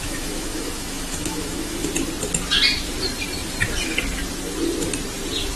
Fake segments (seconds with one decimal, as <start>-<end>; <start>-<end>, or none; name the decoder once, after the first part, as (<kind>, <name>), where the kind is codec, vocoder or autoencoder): 0.0-1.9 (autoencoder, DAC-VAE)